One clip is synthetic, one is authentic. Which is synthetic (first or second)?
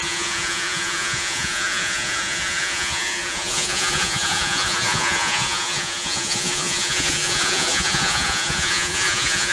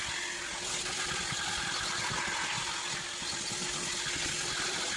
first